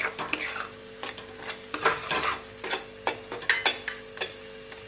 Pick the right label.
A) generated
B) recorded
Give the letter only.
B